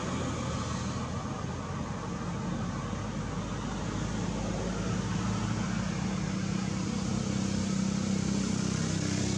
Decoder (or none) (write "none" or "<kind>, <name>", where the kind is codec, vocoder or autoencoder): none